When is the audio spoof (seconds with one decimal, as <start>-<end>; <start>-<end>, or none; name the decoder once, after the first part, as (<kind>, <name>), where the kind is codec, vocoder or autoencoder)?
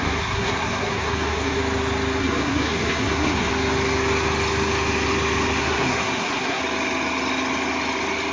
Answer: 0.0-1.6 (codec, SNAC); 2.2-3.5; 5.6-6.6